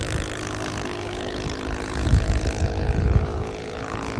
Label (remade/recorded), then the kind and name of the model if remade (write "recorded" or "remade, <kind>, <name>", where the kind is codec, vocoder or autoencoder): remade, codec, HILCodec